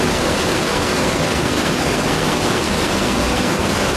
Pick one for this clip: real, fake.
fake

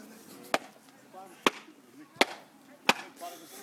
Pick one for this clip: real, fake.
real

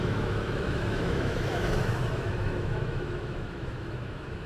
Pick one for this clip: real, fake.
fake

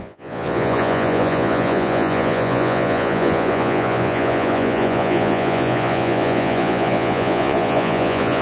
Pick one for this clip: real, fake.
fake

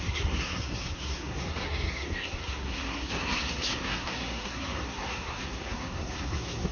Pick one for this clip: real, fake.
fake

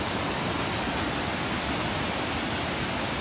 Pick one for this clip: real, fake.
real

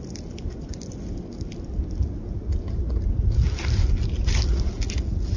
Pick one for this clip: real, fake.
real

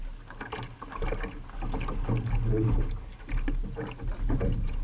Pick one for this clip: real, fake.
real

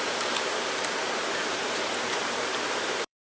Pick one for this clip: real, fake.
fake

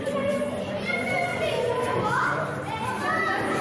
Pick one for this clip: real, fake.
real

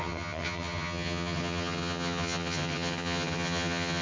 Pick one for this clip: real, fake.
fake